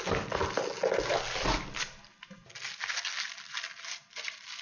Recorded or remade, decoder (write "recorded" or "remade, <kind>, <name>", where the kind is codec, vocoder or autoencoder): recorded